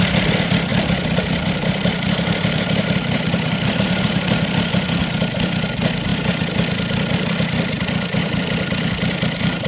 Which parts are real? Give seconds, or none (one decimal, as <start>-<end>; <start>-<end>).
0.0-0.7; 4.7-6.1; 8.4-9.7